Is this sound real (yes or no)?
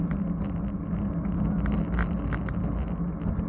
yes